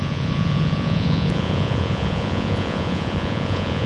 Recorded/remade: remade